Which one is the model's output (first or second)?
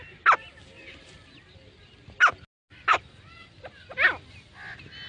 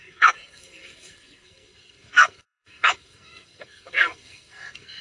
second